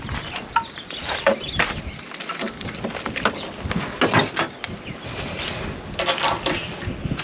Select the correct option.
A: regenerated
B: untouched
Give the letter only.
B